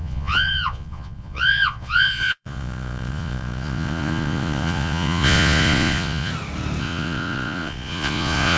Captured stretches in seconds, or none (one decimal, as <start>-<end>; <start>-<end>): 6.3-6.8